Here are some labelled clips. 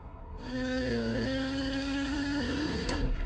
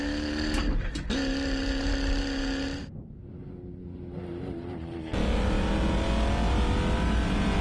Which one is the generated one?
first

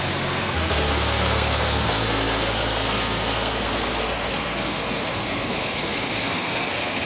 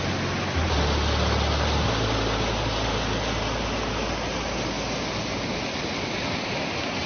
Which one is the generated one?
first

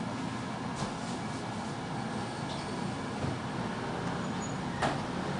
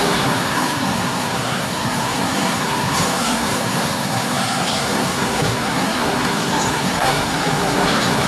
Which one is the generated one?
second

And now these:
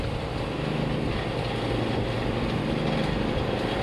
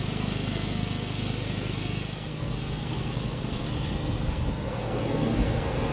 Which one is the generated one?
second